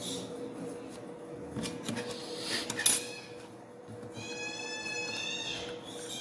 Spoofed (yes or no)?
no